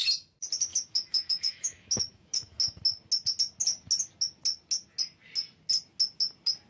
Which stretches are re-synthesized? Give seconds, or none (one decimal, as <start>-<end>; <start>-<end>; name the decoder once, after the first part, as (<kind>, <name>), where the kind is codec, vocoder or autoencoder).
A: 0.7-2.8 (autoencoder, DAC-VAE)